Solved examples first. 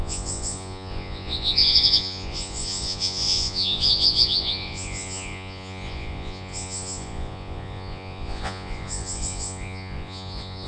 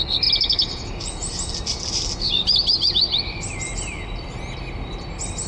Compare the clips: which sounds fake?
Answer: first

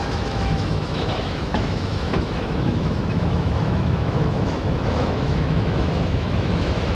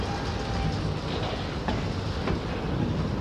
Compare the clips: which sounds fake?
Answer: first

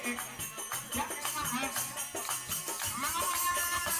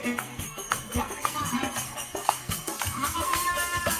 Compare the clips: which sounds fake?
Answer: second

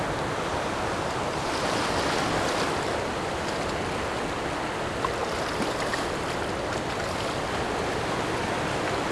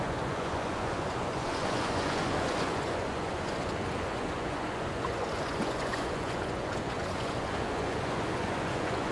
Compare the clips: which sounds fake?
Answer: second